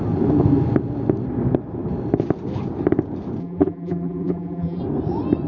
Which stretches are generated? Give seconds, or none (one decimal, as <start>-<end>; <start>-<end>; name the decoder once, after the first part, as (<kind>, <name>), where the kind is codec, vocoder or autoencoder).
3.4-4.8 (vocoder, BigVGAN v2)